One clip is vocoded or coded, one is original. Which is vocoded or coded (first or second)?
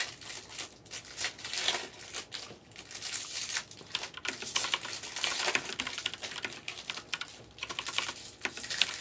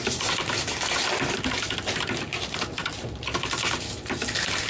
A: second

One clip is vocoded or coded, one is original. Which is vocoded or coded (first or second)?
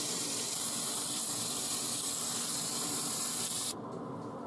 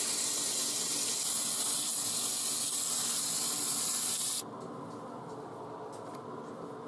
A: first